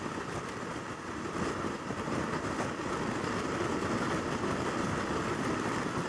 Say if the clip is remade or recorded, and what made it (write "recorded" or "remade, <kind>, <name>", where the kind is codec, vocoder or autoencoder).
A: recorded